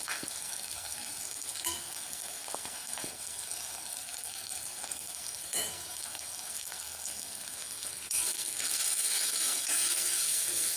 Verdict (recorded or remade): remade